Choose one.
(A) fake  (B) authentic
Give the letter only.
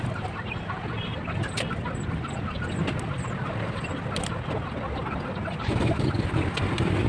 B